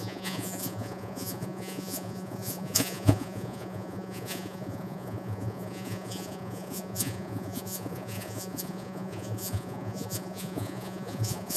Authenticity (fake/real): fake